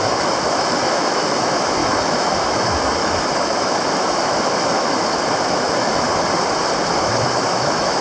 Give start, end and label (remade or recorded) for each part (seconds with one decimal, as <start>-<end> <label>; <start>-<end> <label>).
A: 0.0-6.1 remade; 6.1-7.0 recorded; 7.0-8.0 remade